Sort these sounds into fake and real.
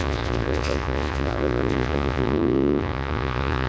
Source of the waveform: fake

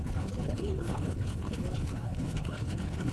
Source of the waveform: fake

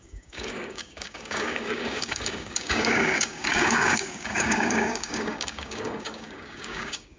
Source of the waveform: fake